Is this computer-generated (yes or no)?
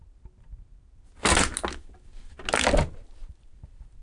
no